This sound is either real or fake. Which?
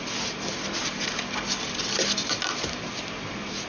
real